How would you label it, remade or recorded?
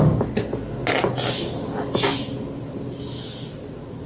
recorded